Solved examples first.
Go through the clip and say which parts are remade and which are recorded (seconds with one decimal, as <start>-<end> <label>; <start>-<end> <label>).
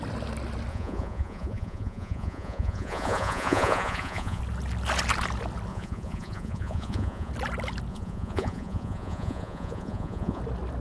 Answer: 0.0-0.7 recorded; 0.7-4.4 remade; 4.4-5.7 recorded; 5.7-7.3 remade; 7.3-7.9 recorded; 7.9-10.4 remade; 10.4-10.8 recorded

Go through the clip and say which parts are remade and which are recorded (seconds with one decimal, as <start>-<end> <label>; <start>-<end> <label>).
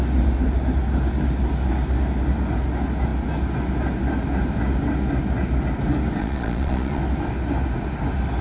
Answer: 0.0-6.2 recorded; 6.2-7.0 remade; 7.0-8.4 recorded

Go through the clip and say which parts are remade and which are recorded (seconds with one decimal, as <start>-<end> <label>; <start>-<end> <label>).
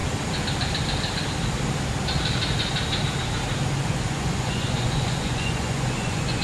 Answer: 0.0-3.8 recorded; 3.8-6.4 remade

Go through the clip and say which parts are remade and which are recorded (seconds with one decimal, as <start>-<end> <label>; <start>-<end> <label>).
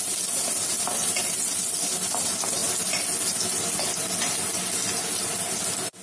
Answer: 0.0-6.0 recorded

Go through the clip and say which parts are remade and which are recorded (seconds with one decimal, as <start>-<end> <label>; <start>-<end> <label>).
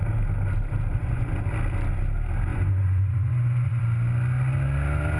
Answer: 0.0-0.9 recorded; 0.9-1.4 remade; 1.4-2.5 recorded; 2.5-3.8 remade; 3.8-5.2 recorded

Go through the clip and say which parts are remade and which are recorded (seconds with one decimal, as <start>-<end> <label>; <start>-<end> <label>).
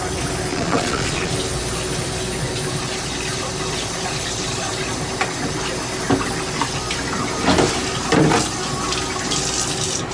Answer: 0.0-0.5 recorded; 0.5-1.3 remade; 1.3-10.1 recorded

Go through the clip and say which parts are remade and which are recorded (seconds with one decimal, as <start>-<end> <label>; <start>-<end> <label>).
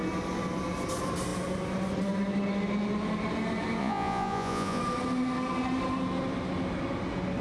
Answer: 0.0-3.8 recorded; 3.8-4.8 remade; 4.8-7.4 recorded